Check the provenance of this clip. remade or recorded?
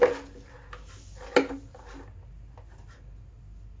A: recorded